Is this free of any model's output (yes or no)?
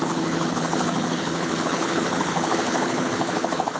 no